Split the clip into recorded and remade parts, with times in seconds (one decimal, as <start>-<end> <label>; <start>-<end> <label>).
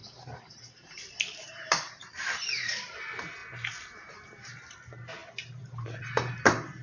0.0-6.8 remade